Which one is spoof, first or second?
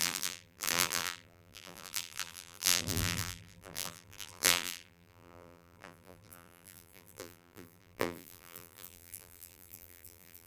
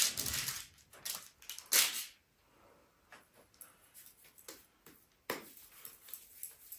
first